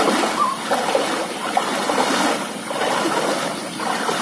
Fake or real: real